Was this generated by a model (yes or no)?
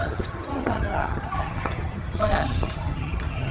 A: yes